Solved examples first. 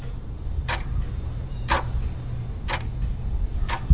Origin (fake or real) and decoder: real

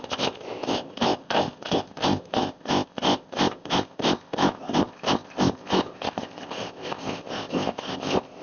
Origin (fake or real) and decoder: fake, codec, ZipCodec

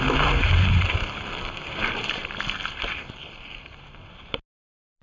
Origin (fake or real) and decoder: real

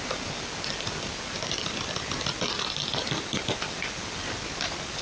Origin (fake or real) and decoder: real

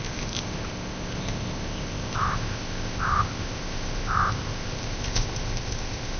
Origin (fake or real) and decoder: fake, codec, ZipCodec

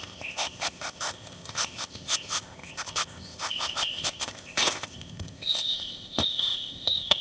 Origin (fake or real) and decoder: fake, codec, ZipCodec